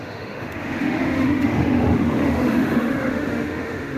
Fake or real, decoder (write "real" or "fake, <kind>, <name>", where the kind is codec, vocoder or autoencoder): fake, autoencoder, DAC-VAE